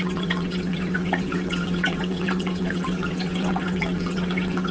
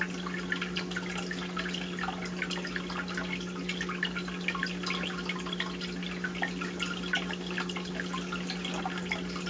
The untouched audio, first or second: second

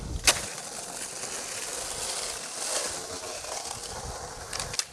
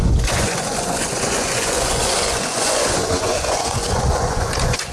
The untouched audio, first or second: first